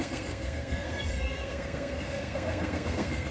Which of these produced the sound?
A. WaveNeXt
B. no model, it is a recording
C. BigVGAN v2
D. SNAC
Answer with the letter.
D